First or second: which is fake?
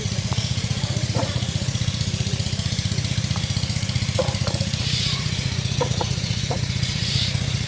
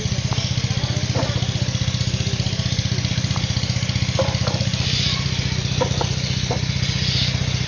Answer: first